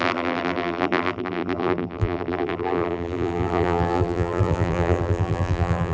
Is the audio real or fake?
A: fake